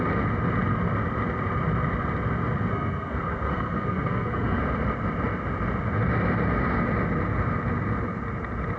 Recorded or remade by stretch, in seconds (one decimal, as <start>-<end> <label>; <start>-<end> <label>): 0.0-2.7 recorded; 2.7-4.6 remade; 4.6-8.8 recorded